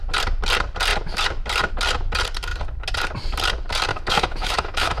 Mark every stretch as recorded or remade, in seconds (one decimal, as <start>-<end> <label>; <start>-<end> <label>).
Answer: 0.0-3.9 recorded; 3.9-5.0 remade